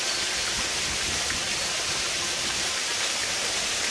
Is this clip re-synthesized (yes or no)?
no